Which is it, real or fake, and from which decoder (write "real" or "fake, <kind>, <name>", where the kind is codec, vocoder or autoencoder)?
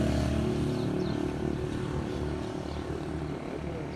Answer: real